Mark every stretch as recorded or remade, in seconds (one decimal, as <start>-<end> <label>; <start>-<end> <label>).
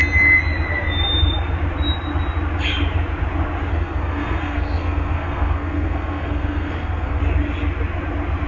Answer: 0.0-3.7 recorded; 3.7-7.2 remade; 7.2-8.5 recorded